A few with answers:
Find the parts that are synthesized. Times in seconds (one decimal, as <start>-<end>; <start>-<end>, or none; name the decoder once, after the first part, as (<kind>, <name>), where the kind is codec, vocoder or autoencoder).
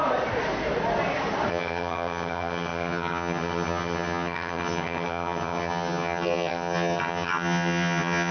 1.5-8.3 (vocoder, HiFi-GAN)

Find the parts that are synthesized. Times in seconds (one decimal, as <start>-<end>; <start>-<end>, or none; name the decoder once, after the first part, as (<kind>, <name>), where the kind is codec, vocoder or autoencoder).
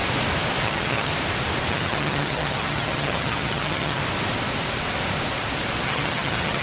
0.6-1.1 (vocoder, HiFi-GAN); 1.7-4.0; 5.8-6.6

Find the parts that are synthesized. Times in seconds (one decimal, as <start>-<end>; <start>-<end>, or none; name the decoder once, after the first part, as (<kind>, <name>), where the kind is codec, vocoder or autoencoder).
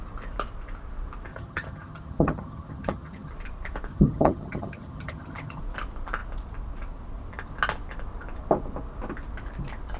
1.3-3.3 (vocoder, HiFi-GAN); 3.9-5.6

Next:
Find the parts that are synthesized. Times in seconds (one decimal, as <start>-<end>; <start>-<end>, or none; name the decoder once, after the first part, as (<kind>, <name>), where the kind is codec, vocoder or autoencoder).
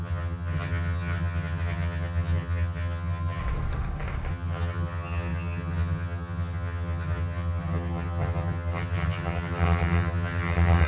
0.0-3.4 (vocoder, HiFi-GAN); 4.3-10.9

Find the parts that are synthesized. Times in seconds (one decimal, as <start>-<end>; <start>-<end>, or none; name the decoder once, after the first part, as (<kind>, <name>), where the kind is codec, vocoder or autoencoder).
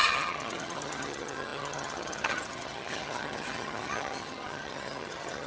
0.0-5.5 (vocoder, HiFi-GAN)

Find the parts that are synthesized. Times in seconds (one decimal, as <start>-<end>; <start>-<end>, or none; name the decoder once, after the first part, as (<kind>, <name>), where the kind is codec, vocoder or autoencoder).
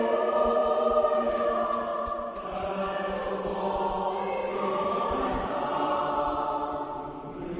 none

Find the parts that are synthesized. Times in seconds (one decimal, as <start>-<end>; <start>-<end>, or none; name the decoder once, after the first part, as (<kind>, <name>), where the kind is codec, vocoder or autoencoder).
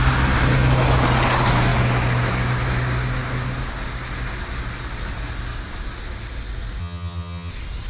6.8-7.5 (vocoder, HiFi-GAN)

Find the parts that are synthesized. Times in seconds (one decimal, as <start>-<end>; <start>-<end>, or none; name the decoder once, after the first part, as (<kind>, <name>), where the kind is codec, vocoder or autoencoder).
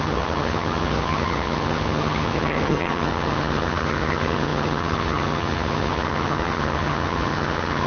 0.0-7.9 (vocoder, HiFi-GAN)